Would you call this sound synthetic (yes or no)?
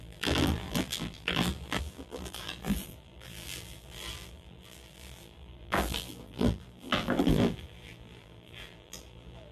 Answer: yes